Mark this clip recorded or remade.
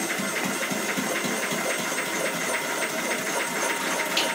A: recorded